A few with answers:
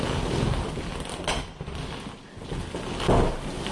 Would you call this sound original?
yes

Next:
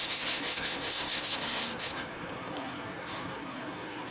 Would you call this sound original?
no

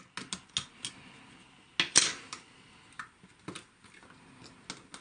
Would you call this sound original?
yes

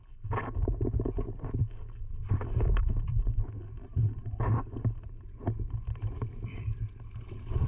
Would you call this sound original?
yes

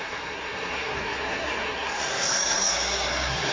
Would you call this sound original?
no